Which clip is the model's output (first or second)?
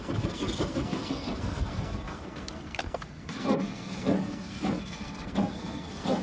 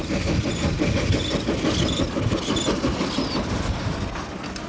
first